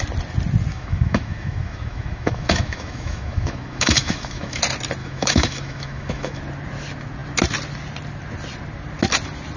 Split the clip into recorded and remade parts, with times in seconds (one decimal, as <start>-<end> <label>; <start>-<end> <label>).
0.0-0.7 recorded; 0.7-4.6 remade; 4.6-5.0 recorded; 5.0-6.4 remade; 6.4-9.6 recorded